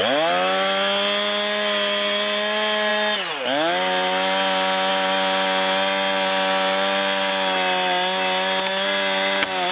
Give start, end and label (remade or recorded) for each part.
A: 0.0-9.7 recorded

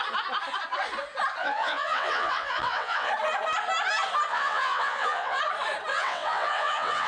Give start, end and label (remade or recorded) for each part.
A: 0.0-1.4 recorded; 1.4-3.1 remade; 3.1-4.3 recorded; 4.3-5.4 remade; 5.4-5.9 recorded; 5.9-7.1 remade

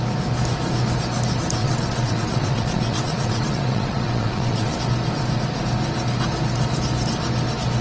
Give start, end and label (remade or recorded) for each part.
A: 0.0-1.6 recorded; 1.6-4.8 remade; 4.8-7.8 recorded